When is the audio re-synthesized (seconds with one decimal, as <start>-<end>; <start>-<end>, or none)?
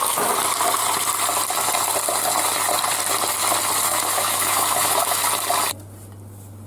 3.9-5.3